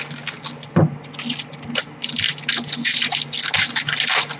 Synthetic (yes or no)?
no